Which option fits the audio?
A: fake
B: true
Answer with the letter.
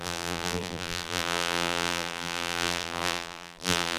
A